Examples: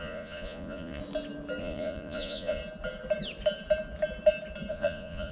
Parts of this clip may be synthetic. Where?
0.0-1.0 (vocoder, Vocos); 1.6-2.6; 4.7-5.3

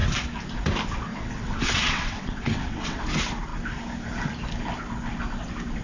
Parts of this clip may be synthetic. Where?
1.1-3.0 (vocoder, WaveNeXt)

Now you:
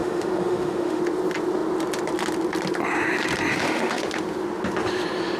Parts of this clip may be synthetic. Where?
0.0-1.0 (autoencoder, DAC-VAE); 3.5-4.0

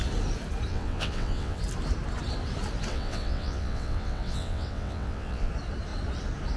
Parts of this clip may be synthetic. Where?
0.7-1.6 (vocoder, WaveNeXt); 2.9-5.5